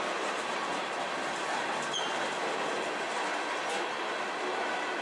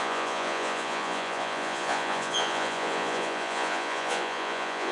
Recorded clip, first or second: first